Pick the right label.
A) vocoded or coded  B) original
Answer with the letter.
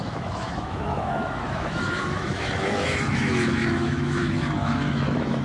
A